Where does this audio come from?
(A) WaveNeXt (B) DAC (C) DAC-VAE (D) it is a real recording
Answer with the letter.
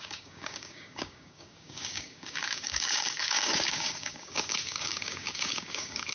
B